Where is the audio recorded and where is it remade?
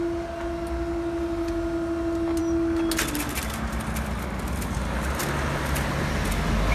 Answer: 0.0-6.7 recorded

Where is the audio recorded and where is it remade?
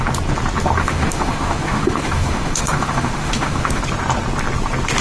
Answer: 0.0-0.8 recorded; 0.8-3.8 remade; 3.8-5.0 recorded